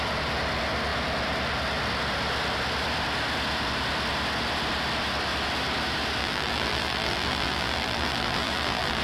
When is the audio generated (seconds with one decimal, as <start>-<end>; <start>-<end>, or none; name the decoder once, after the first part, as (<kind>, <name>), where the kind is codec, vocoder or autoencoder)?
6.2-9.0 (vocoder, BigVGAN v2)